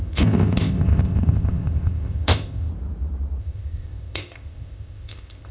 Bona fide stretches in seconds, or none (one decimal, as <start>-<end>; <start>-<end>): 2.7-3.4